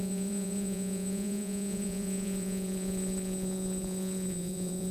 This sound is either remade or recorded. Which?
remade